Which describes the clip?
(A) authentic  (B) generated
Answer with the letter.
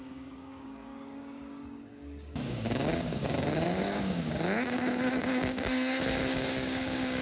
B